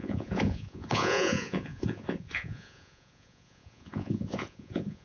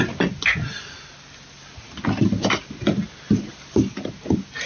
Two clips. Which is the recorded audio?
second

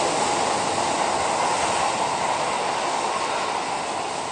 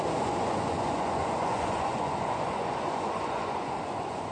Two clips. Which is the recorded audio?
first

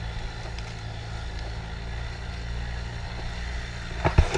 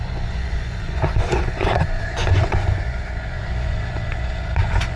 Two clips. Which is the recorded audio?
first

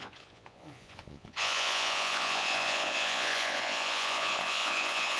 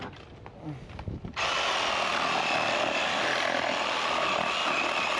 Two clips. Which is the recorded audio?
second